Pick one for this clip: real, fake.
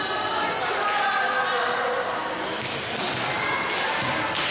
real